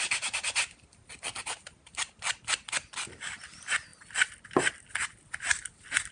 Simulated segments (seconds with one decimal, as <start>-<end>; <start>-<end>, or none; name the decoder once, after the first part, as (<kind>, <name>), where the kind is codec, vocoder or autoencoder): none